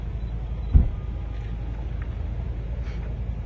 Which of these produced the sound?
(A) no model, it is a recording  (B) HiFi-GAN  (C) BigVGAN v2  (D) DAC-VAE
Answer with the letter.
A